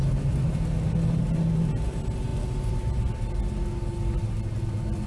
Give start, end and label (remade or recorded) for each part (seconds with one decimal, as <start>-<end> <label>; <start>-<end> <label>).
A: 0.0-5.1 recorded